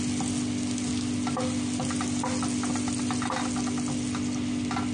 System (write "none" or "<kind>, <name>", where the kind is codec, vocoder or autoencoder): none